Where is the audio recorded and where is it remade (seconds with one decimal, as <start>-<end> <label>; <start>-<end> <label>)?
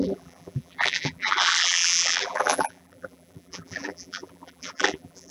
0.0-5.3 remade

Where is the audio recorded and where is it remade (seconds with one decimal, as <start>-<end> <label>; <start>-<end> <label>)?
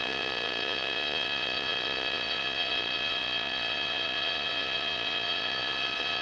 0.0-6.2 remade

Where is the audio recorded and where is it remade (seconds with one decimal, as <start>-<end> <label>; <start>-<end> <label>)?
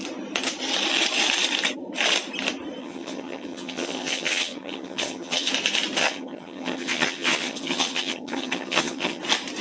0.0-2.8 recorded; 2.8-5.5 remade; 5.5-6.0 recorded; 6.0-9.2 remade; 9.2-9.6 recorded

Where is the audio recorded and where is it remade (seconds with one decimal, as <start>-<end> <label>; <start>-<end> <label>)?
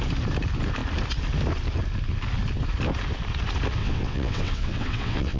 0.0-3.8 recorded; 3.8-5.4 remade